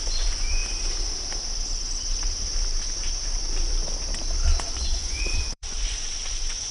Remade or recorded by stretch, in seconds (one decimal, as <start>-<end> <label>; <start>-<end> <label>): 0.0-0.6 remade; 0.6-4.6 recorded; 4.6-6.7 remade